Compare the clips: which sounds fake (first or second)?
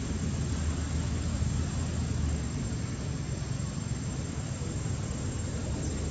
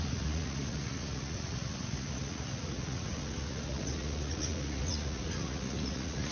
second